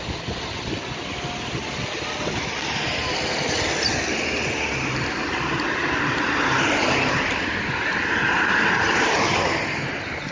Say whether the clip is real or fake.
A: real